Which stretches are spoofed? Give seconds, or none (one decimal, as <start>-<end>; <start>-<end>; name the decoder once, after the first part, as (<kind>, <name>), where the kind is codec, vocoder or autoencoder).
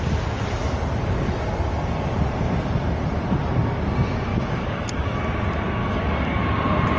4.3-5.2 (codec, DAC); 5.8-6.4